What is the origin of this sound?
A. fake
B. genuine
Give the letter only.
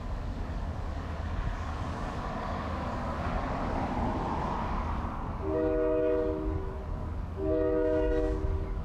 A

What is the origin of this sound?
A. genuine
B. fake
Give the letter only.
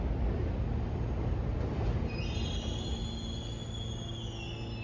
A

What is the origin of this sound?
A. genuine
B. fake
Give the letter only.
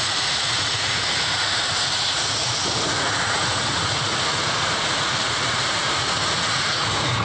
B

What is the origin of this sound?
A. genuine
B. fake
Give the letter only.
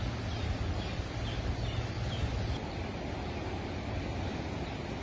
A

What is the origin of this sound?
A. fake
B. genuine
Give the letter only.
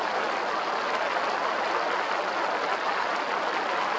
B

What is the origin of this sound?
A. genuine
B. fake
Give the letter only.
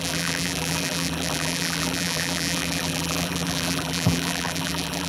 B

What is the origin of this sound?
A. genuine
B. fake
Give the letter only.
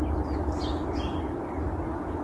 A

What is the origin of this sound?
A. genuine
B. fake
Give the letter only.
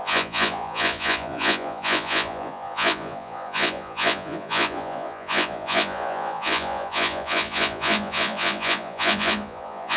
B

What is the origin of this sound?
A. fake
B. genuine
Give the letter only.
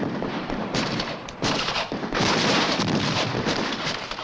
A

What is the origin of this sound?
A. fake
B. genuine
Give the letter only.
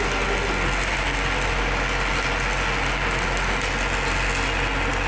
B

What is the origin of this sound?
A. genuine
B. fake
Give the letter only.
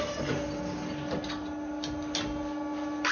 A